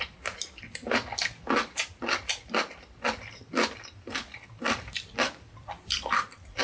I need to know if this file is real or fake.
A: real